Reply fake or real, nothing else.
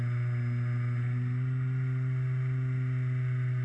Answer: real